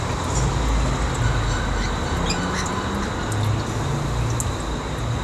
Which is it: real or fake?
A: real